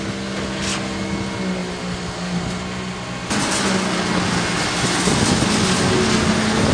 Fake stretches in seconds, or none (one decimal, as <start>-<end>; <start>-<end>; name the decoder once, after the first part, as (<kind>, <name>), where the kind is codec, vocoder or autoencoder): none